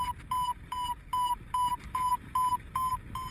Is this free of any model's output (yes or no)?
yes